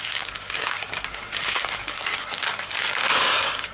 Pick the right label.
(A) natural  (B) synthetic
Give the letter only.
B